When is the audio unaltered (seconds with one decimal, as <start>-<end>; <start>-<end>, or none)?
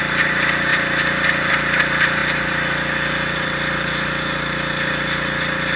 none